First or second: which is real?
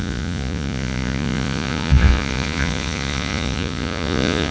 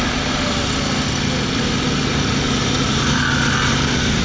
second